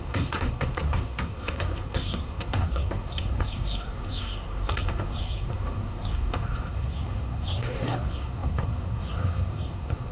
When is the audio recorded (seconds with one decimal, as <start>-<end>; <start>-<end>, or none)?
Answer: none